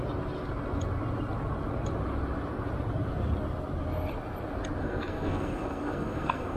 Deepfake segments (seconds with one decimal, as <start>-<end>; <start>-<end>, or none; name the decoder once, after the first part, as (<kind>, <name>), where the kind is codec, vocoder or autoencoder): 4.8-6.6 (codec, SNAC)